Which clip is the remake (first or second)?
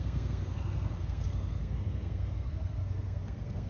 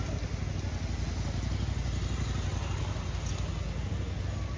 first